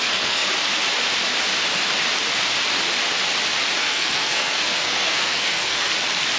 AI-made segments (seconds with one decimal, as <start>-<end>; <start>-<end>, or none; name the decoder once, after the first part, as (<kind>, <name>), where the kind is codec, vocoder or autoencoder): 0.0-0.5 (codec, SNAC); 3.8-5.9